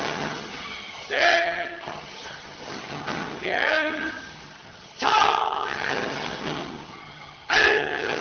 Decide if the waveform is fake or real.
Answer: fake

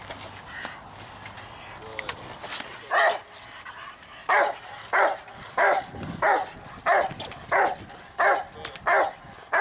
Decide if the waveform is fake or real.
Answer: real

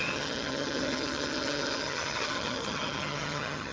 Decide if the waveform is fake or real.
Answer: fake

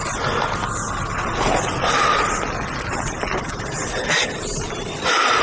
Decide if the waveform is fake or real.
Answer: real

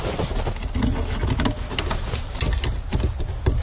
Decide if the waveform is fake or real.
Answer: real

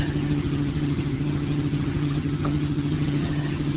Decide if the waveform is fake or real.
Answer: fake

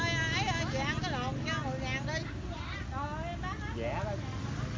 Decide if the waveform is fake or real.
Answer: real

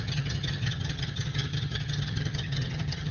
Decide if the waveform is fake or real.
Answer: fake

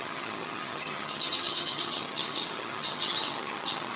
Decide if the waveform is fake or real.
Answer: fake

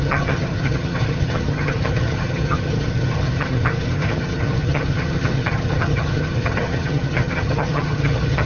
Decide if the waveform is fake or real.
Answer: fake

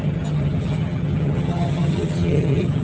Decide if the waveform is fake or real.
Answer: fake